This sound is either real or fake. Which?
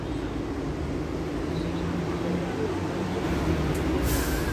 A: real